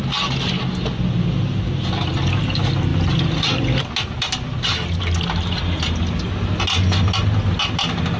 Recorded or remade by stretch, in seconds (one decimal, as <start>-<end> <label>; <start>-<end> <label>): 0.0-8.2 recorded